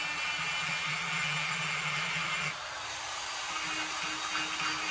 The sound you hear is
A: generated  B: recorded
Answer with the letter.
B